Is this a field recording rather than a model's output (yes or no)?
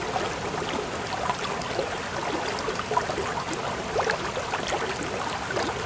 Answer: yes